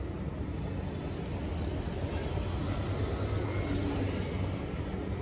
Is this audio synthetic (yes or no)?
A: no